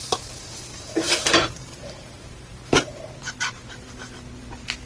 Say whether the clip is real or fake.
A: fake